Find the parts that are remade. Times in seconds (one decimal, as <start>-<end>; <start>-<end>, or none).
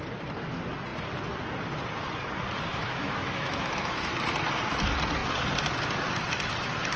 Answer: 2.7-4.1